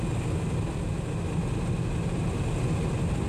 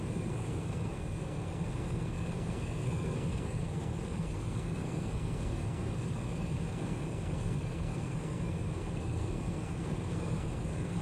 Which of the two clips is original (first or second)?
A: first